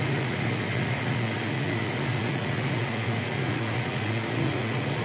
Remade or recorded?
remade